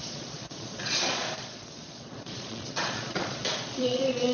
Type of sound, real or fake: fake